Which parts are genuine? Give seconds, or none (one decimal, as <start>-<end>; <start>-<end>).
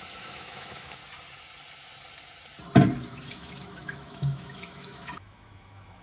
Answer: 1.0-3.1